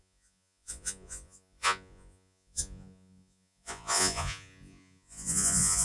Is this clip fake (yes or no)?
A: yes